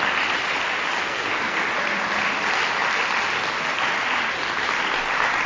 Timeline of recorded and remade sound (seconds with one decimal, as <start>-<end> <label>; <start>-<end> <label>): 0.0-1.0 recorded; 1.0-1.6 remade; 1.6-5.5 recorded